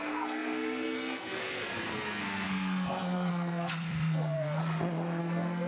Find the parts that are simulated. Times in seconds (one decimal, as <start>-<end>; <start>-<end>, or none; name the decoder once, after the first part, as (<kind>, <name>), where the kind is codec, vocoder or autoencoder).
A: 0.0-4.6 (codec, SNAC); 5.2-5.7